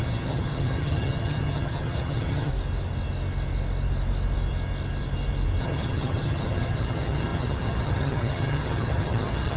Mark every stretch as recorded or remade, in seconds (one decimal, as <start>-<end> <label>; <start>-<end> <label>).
0.0-2.5 remade; 2.5-5.6 recorded; 5.6-9.6 remade